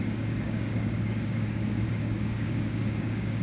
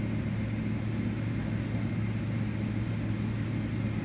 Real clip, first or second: second